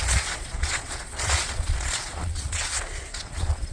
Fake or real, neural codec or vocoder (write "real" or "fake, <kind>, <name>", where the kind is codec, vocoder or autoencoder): fake, vocoder, Vocos